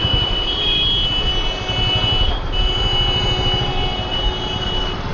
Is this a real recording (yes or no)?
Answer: yes